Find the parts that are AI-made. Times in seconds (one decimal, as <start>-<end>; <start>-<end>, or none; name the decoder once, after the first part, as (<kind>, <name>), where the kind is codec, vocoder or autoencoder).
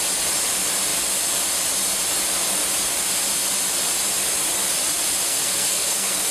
5.3-6.3 (codec, SNAC)